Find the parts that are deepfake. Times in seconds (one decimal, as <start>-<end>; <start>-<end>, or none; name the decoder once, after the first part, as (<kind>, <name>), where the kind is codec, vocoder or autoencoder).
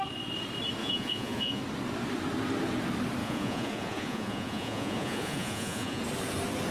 0.8-1.6 (vocoder, Vocos); 3.2-6.0